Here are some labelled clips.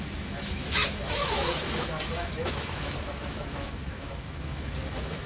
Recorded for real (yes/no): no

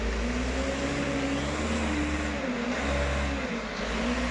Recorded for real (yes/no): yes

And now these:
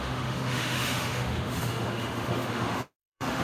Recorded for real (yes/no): no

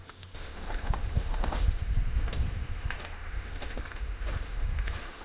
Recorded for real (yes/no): no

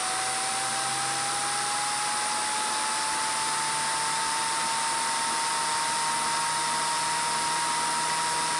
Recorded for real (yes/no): yes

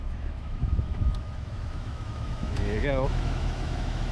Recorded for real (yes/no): no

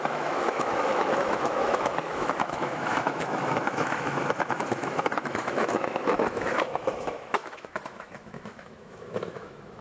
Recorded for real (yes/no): no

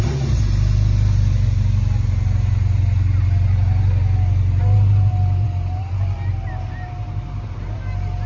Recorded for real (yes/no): yes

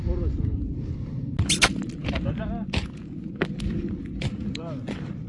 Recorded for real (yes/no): yes